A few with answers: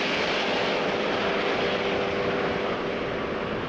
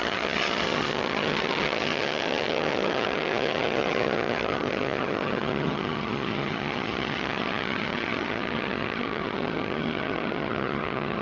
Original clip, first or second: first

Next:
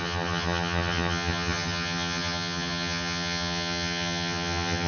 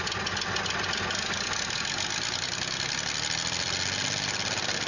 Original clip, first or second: second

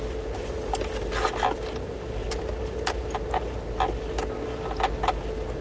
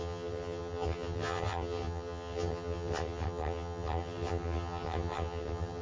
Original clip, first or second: first